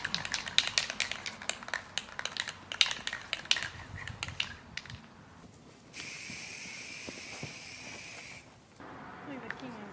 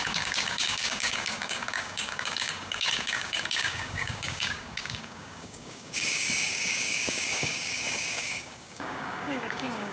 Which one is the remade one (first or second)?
second